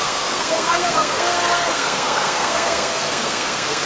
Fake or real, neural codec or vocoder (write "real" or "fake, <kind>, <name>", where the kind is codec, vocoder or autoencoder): fake, codec, SNAC